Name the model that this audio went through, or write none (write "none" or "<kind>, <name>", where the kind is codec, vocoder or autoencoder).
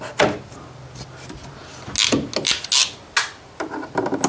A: none